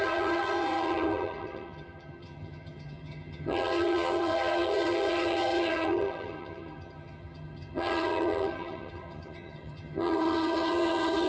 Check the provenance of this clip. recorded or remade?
remade